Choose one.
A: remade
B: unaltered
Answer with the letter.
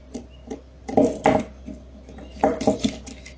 B